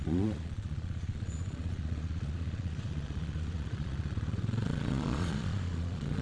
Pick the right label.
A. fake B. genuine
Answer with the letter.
A